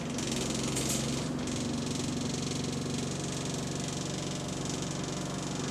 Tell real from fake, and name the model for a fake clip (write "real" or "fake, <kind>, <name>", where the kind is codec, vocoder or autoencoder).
real